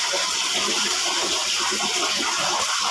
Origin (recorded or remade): remade